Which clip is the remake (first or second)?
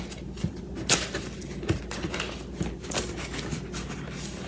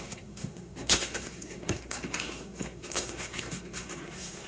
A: second